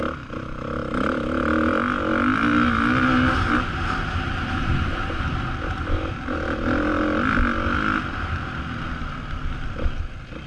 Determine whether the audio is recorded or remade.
recorded